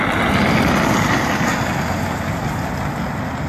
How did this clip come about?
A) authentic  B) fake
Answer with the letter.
A